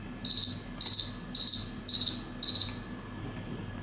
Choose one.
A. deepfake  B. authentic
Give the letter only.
B